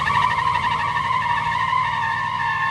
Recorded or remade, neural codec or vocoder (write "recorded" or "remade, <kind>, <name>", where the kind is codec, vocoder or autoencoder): recorded